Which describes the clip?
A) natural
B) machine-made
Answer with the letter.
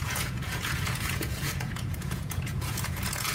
B